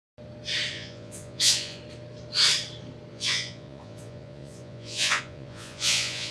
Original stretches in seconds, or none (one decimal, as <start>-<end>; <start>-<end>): 0.0-0.7; 1.8-3.1